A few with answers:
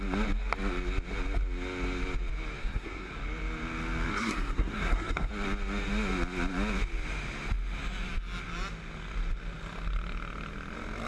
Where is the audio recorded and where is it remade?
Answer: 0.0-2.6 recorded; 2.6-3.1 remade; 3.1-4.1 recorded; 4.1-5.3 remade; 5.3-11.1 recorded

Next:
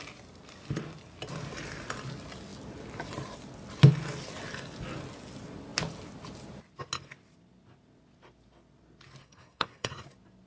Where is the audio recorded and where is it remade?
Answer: 0.0-9.2 recorded; 9.2-9.9 remade; 9.9-10.5 recorded

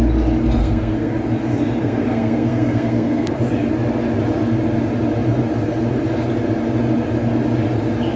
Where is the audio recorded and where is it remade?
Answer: 0.0-0.6 recorded; 0.6-1.1 remade; 1.1-1.8 recorded; 1.8-3.3 remade; 3.3-8.2 recorded